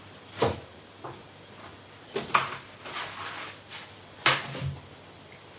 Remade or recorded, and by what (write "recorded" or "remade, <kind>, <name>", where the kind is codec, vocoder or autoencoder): recorded